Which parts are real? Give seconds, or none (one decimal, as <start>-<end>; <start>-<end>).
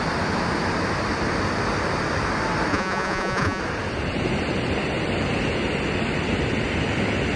0.0-2.7; 3.6-7.4